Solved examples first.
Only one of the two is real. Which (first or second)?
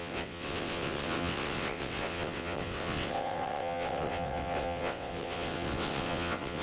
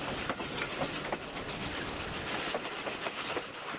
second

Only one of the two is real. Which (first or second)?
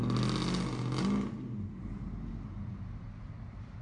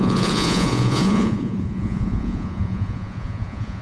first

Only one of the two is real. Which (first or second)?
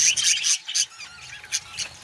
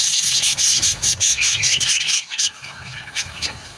first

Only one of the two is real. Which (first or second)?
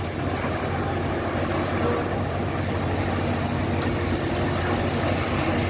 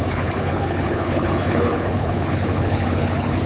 first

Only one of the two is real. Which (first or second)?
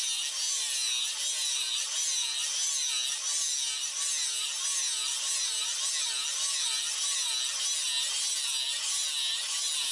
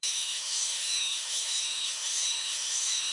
first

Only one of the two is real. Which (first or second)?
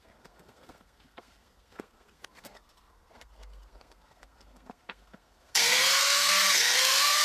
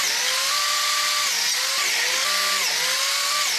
second